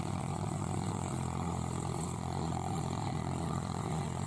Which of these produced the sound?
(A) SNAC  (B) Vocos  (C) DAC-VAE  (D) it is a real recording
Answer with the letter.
B